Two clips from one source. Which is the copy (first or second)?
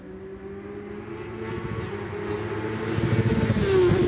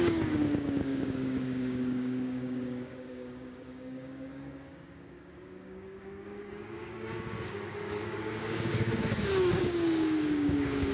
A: second